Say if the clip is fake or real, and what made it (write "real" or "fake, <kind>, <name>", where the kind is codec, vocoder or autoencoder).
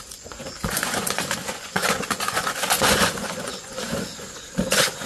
fake, vocoder, Vocos